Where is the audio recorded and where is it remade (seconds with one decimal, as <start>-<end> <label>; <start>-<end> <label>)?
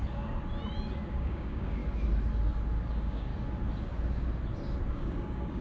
0.0-1.1 recorded; 1.1-1.8 remade; 1.8-2.9 recorded; 2.9-3.3 remade; 3.3-4.9 recorded; 4.9-5.6 remade